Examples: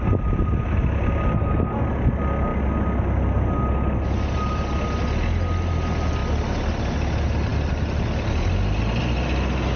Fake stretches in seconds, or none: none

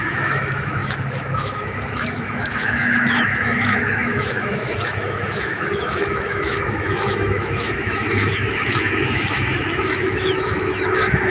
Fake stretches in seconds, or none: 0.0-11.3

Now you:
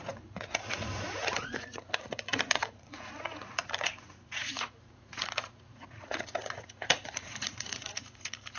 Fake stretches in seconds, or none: 0.0-8.6

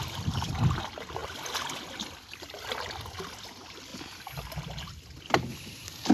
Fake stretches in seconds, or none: none

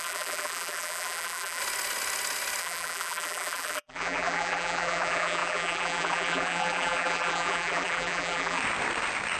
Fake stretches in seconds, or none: 0.0-1.6; 2.6-8.6

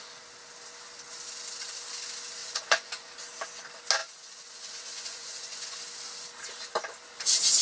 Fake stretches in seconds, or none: 2.4-3.1; 4.0-5.8

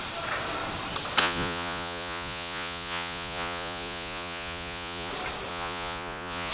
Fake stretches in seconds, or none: 1.2-5.1; 5.5-6.5

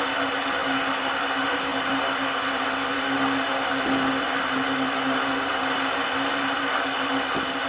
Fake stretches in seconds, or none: none